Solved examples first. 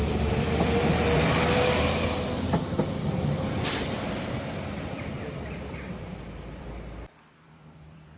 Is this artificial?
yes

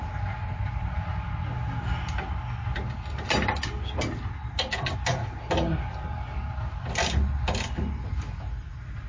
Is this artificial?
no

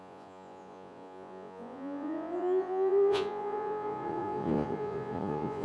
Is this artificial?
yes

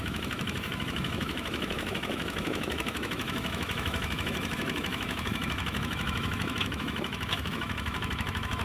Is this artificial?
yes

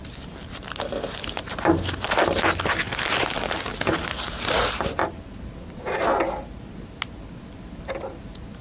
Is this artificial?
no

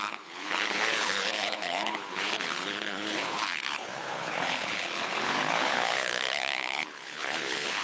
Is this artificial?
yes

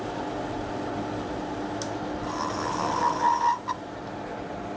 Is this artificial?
no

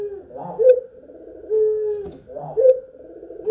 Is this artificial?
no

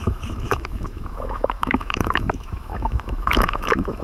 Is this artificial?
yes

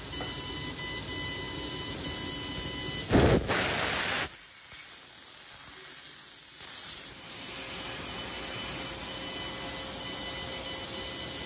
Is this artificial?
no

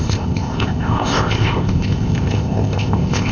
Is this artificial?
yes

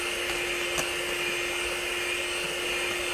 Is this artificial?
no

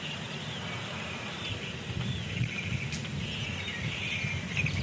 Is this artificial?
yes